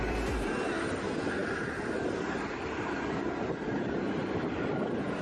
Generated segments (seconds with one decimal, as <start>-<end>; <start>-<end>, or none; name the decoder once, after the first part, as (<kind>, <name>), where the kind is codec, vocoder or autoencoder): none

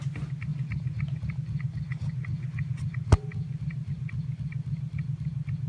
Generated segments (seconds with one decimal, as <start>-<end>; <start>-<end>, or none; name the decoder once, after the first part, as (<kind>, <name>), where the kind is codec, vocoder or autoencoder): none

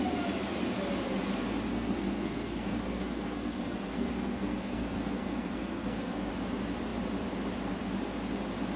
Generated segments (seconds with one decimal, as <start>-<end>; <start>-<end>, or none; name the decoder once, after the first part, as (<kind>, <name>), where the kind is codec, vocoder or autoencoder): 1.7-6.3 (codec, SNAC)

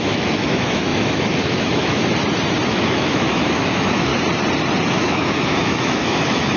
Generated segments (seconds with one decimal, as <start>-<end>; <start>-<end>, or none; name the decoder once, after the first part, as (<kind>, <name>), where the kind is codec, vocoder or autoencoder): 0.0-2.0 (autoencoder, DAC-VAE); 2.7-4.1; 4.9-6.6

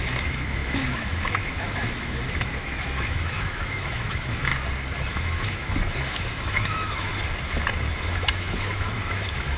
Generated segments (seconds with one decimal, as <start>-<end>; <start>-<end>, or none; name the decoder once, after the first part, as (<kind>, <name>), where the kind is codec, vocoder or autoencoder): 0.0-4.5 (autoencoder, DAC-VAE); 5.1-7.1; 7.9-9.6

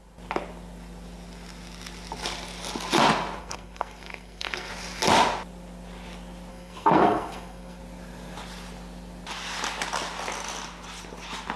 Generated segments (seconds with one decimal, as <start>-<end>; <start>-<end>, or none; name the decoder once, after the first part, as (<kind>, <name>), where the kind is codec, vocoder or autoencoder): 3.4-4.7 (codec, SNAC); 6.5-7.8

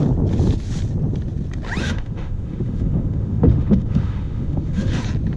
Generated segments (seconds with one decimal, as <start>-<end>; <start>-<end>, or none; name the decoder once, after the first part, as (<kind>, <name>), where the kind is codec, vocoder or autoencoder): 1.8-5.0 (autoencoder, DAC-VAE)